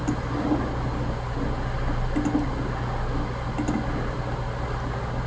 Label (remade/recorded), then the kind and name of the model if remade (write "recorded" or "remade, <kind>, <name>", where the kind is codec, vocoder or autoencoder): recorded